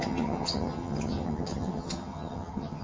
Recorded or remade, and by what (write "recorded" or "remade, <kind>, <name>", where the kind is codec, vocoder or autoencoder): remade, vocoder, HiFi-GAN